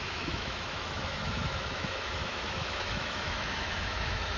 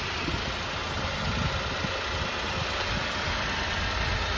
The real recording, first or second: second